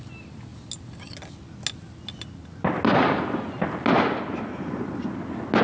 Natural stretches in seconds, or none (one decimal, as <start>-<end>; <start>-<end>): 0.0-5.6